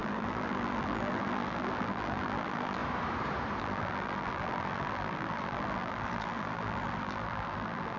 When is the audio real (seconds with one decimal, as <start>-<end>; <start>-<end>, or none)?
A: 2.8-3.6